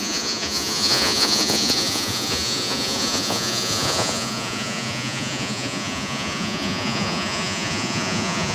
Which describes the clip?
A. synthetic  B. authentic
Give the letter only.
A